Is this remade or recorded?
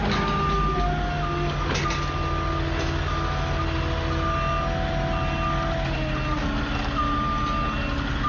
recorded